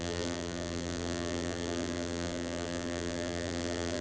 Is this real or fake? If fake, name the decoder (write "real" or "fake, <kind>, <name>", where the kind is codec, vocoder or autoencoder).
fake, vocoder, BigVGAN v2